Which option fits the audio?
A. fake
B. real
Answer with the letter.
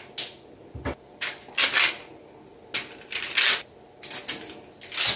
B